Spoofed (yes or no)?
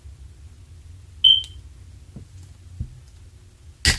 no